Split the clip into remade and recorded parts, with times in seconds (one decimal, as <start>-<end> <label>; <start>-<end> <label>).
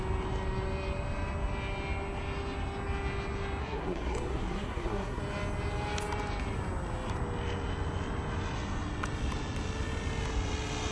0.0-3.6 recorded; 3.6-5.2 remade; 5.2-10.9 recorded